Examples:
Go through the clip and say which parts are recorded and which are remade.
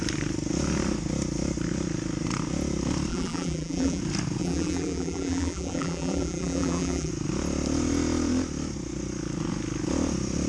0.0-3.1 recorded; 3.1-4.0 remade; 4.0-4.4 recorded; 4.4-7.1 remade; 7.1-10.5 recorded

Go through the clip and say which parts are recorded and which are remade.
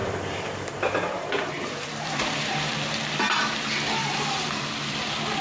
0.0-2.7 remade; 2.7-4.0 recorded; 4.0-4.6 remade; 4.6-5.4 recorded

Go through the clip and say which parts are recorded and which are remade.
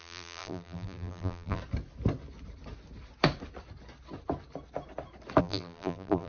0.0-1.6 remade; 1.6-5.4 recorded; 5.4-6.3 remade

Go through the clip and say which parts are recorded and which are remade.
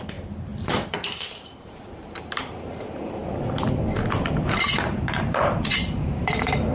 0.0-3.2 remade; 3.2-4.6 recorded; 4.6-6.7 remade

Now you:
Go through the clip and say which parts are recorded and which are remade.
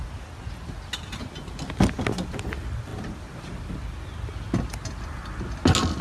0.0-6.0 recorded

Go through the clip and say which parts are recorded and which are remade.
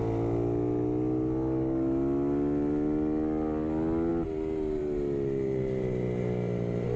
0.0-7.0 recorded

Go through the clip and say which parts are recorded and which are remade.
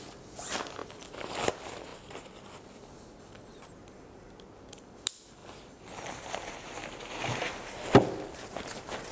0.0-9.1 recorded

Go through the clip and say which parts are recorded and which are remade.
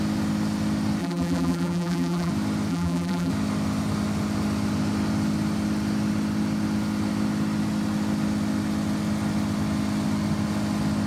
0.0-1.0 recorded; 1.0-2.3 remade; 2.3-2.7 recorded; 2.7-3.3 remade; 3.3-11.1 recorded